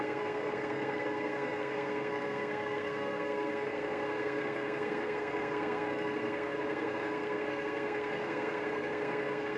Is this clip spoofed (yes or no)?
yes